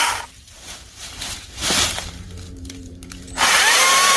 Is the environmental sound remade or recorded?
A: remade